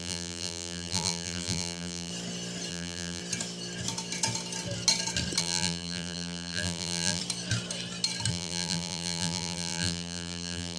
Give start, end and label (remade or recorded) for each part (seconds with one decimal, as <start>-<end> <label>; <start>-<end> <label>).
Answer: 0.0-2.1 remade; 2.1-2.7 recorded; 2.7-3.2 remade; 3.2-5.4 recorded; 5.4-7.2 remade; 7.2-8.3 recorded; 8.3-10.8 remade